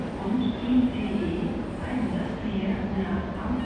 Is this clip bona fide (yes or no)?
yes